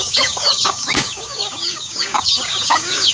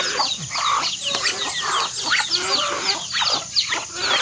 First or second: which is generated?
first